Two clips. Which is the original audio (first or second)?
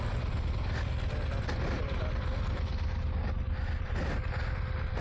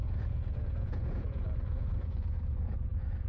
first